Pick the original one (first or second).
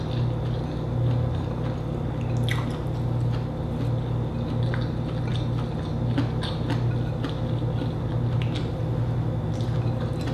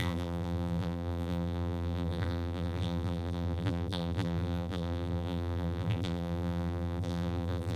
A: first